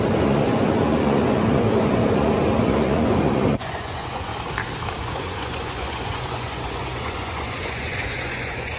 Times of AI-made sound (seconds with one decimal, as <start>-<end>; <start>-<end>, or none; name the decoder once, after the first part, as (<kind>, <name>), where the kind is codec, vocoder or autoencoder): 0.0-4.3 (vocoder, Vocos); 5.0-8.8